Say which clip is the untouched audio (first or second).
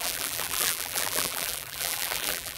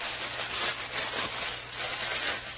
second